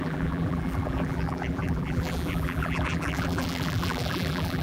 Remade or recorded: remade